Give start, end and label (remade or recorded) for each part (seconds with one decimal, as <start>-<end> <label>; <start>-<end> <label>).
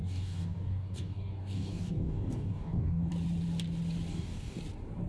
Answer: 0.0-3.1 remade; 3.1-4.1 recorded; 4.1-4.6 remade; 4.6-5.1 recorded